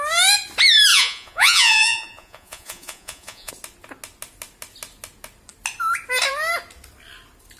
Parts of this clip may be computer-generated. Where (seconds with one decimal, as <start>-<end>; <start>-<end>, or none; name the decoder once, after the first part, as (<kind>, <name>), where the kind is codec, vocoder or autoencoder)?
0.9-3.5 (vocoder, Vocos)